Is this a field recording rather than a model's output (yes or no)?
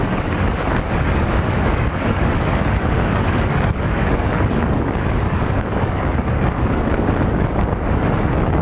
no